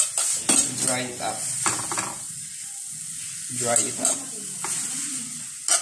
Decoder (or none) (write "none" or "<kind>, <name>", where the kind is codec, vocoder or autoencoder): none